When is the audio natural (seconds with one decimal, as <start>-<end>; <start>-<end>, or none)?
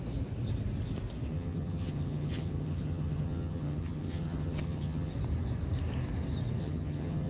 0.0-1.3; 5.1-6.6